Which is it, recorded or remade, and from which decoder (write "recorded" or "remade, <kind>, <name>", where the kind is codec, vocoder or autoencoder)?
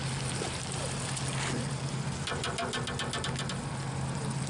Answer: recorded